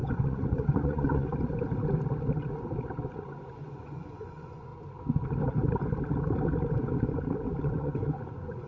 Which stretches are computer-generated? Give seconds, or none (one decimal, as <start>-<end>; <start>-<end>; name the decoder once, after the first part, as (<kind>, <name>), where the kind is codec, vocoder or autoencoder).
0.0-1.3 (vocoder, Vocos); 3.4-4.7; 7.6-8.7